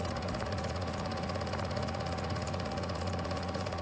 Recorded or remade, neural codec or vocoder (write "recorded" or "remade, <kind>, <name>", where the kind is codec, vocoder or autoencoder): remade, vocoder, Vocos